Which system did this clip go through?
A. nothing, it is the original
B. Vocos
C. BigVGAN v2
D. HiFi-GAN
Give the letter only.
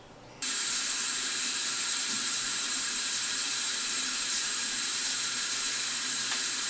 C